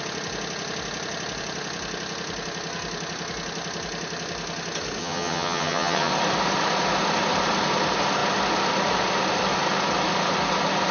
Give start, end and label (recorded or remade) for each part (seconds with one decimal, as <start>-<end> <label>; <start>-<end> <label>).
0.0-5.0 recorded; 5.0-6.1 remade; 6.1-10.9 recorded